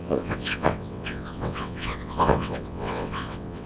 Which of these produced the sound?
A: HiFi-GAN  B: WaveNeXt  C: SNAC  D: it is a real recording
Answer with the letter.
B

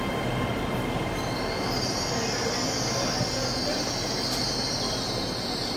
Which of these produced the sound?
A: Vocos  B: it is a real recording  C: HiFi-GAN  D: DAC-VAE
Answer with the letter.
B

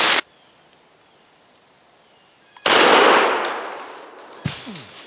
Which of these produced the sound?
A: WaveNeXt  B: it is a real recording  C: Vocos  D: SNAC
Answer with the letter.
B